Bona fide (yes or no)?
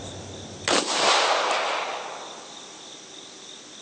yes